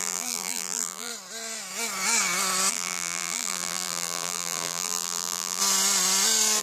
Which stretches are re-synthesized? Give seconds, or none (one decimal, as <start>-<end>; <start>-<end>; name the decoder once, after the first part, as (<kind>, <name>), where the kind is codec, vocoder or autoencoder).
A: 0.0-1.1 (vocoder, BigVGAN v2); 2.7-5.6